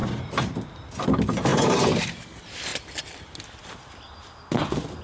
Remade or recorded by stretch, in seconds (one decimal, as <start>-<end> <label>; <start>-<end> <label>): 0.0-1.5 recorded; 1.5-2.0 remade; 2.0-5.0 recorded